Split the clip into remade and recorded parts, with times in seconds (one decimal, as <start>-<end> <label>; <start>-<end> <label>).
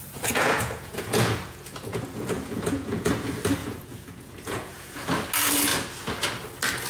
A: 0.0-3.1 remade; 3.1-3.6 recorded; 3.6-5.0 remade; 5.0-6.9 recorded